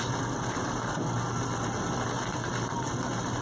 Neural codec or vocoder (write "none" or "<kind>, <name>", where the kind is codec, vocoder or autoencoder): none